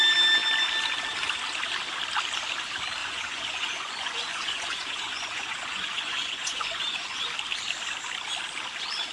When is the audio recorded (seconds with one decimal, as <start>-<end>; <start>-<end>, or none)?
0.0-3.0; 7.2-9.1